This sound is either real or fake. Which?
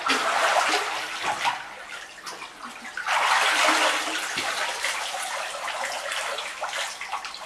real